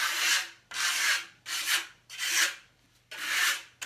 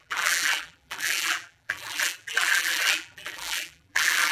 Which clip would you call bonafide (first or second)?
first